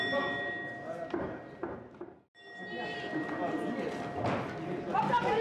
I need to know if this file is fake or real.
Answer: real